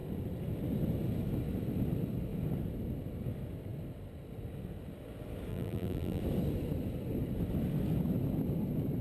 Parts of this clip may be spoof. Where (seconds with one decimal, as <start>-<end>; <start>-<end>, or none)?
5.5-6.2